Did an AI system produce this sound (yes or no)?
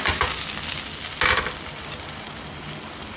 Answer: no